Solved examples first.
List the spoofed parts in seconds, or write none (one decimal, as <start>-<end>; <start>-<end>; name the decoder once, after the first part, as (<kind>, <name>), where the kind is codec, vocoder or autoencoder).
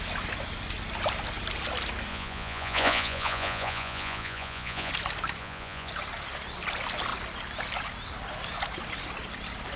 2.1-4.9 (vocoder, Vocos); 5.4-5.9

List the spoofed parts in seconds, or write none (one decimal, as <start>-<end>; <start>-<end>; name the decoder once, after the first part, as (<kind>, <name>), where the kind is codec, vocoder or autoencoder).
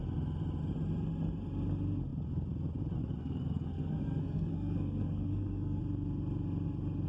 3.2-5.8 (codec, SNAC)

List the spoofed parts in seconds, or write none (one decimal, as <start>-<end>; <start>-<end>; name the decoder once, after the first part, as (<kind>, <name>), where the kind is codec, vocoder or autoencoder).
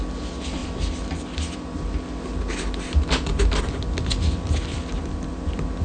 none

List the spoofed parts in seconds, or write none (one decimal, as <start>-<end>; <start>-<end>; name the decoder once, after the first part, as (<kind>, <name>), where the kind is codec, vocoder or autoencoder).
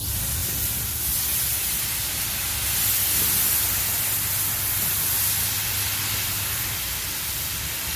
none